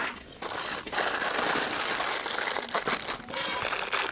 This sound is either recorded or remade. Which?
recorded